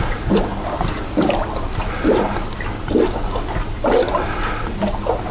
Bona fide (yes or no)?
yes